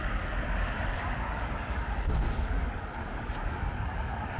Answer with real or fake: fake